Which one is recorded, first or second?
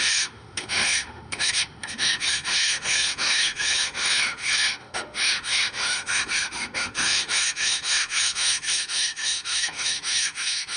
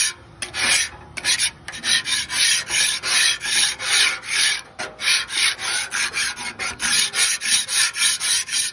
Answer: second